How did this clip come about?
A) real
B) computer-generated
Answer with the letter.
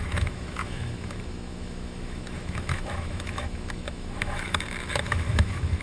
B